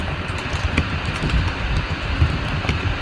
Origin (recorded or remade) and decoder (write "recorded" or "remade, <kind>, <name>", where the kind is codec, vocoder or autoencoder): remade, vocoder, BigVGAN v2